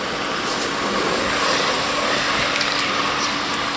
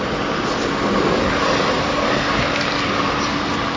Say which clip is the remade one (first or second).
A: second